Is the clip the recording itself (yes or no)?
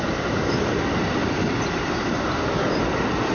yes